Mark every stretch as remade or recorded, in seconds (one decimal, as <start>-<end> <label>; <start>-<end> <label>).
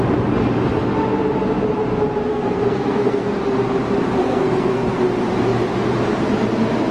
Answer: 0.0-2.3 recorded; 2.3-3.4 remade; 3.4-4.2 recorded; 4.2-5.0 remade; 5.0-6.9 recorded